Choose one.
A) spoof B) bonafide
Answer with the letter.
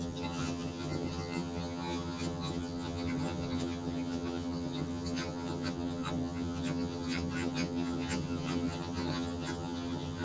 A